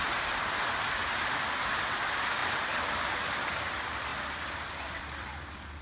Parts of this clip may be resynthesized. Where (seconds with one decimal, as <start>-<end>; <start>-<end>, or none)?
0.0-5.8